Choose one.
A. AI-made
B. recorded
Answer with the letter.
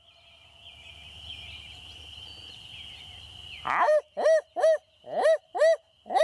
B